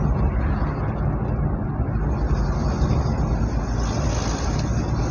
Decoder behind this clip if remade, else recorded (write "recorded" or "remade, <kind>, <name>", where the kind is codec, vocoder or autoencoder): recorded